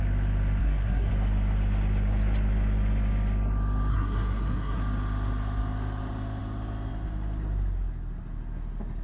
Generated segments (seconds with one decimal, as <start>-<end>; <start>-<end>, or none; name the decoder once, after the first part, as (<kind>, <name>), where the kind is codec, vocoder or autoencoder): 0.6-1.1 (codec, SNAC); 3.9-4.8